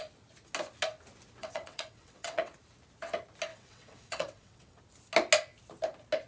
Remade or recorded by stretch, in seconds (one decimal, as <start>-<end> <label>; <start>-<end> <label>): 0.0-1.4 recorded; 1.4-2.5 remade; 2.5-3.5 recorded; 3.5-4.8 remade; 4.8-6.3 recorded